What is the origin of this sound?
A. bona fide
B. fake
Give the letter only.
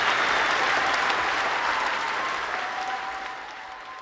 A